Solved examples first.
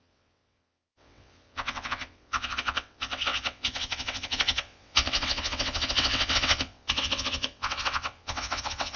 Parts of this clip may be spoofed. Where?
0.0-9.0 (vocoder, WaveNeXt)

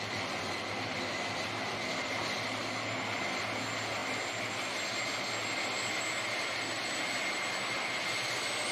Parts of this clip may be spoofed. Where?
none

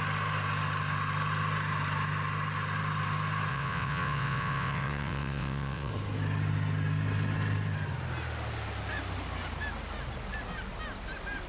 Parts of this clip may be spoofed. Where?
3.5-5.9 (vocoder, WaveNeXt)

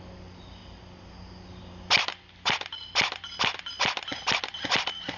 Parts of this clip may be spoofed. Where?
none